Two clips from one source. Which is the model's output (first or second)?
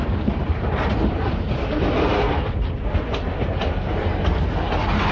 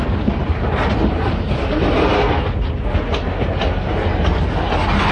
first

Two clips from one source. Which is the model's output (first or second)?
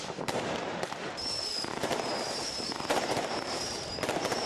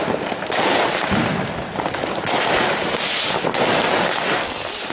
first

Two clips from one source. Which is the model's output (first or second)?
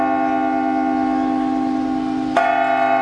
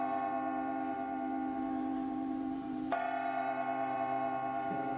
second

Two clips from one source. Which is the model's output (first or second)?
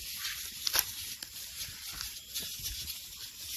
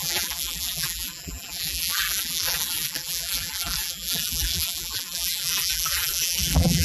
second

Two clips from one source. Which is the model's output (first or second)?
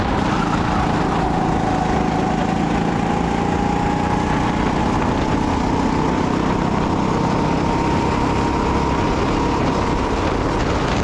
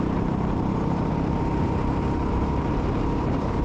second